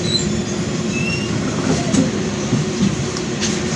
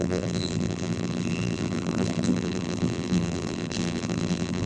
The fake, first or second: second